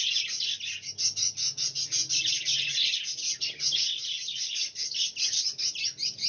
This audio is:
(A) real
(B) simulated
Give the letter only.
A